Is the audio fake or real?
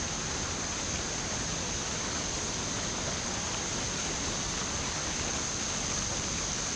real